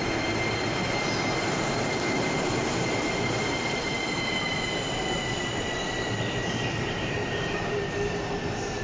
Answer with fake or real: fake